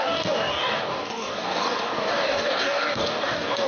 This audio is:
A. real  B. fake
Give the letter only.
B